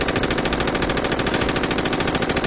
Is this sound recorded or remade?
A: recorded